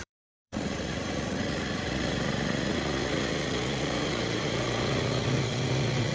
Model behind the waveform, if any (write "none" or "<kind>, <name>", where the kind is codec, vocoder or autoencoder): vocoder, Vocos